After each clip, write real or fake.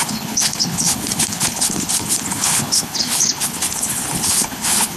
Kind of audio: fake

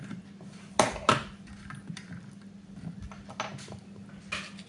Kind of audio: real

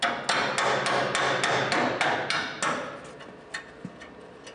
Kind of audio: real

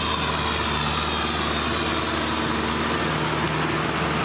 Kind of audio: real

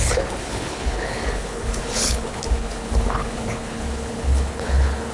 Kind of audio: fake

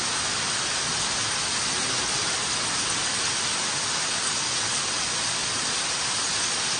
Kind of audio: real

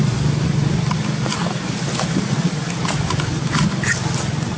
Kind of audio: real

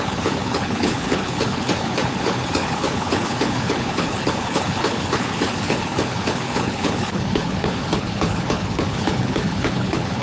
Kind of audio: fake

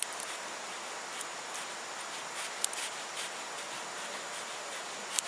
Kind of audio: real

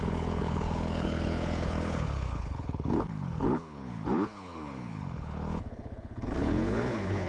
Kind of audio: fake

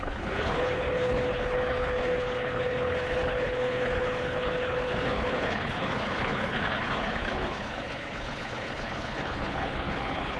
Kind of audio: fake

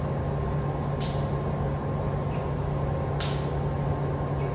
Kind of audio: real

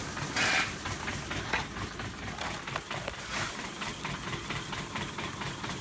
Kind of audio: real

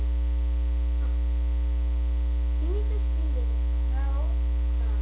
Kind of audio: real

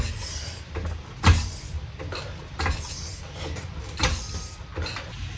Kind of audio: real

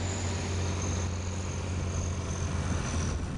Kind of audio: real